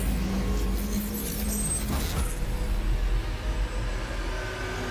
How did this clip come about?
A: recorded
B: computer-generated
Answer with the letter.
A